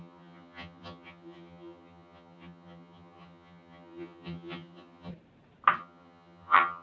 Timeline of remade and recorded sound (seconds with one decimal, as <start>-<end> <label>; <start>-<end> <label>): 0.0-5.1 remade; 5.1-5.8 recorded; 5.8-6.8 remade